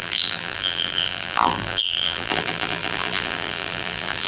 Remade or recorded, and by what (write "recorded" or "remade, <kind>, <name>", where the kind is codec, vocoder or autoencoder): remade, vocoder, BigVGAN v2